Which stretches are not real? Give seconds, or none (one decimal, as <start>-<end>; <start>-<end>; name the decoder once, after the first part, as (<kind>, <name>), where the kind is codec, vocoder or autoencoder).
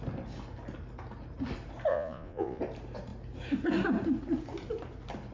1.9-2.6 (vocoder, Vocos)